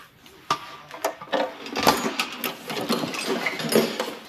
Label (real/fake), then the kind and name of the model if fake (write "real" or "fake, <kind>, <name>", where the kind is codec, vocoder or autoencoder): real